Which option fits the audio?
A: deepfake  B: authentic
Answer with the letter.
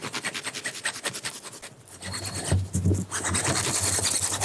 B